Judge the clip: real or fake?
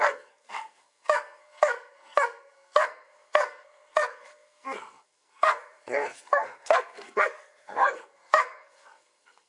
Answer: fake